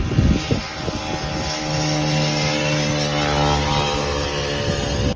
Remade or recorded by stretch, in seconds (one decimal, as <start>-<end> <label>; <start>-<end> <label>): 0.0-5.2 recorded